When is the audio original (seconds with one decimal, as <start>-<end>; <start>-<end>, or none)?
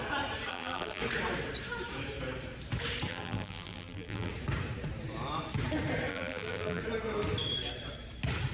0.0-0.5; 1.0-3.1; 4.3-6.1; 6.8-8.5